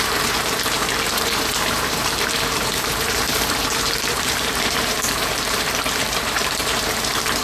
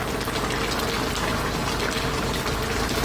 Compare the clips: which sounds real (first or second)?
second